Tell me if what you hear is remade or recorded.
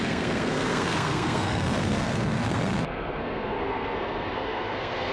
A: remade